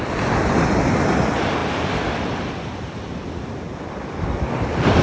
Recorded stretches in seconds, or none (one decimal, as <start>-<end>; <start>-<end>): none